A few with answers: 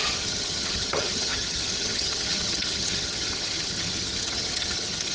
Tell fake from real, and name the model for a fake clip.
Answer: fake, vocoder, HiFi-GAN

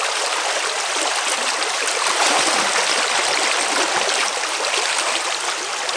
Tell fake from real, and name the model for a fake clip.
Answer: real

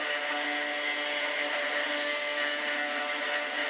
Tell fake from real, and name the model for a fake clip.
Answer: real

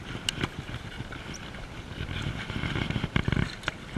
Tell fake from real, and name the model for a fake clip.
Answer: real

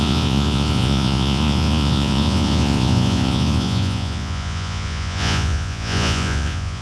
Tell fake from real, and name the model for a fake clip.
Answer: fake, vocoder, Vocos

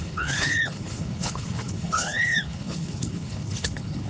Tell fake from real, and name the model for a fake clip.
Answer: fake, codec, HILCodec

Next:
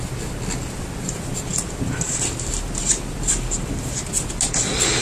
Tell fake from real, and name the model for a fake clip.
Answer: real